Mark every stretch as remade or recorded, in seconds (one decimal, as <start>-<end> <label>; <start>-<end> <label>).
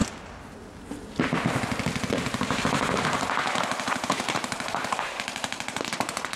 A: 0.0-2.1 recorded; 2.1-6.4 remade